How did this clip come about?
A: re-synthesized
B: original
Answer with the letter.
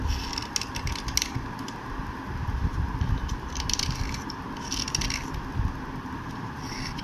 B